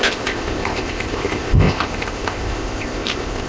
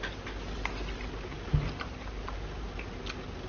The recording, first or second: second